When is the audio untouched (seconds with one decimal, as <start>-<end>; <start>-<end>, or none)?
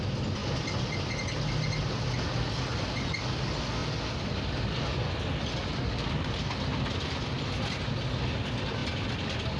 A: 0.0-9.6